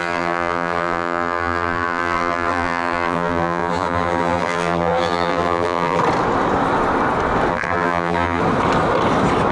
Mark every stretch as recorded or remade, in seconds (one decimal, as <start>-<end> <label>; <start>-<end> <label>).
0.0-6.0 remade; 6.0-7.5 recorded; 7.5-8.4 remade; 8.4-9.5 recorded